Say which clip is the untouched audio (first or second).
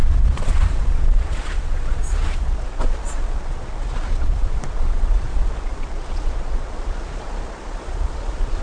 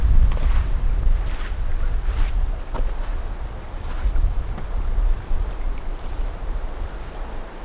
second